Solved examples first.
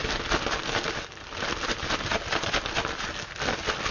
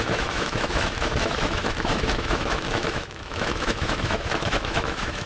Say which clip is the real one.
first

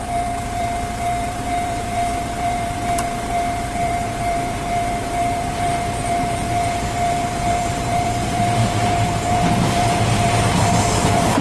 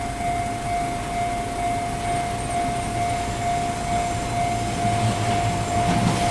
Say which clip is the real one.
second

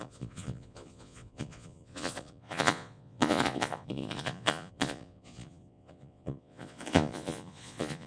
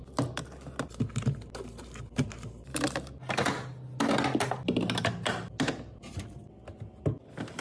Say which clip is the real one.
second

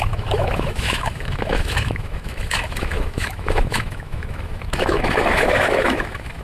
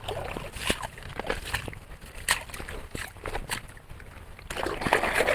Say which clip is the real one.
second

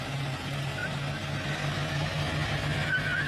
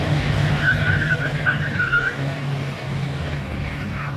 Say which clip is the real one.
first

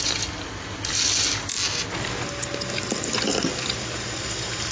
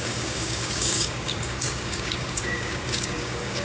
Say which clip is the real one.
first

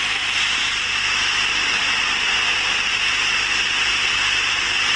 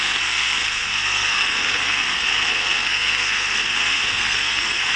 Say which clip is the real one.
first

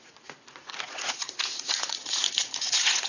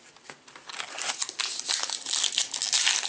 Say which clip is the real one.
second